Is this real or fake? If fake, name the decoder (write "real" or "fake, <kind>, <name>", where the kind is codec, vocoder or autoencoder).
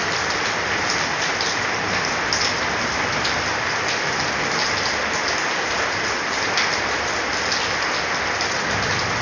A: real